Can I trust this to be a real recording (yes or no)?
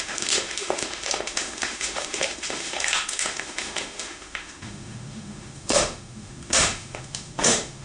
no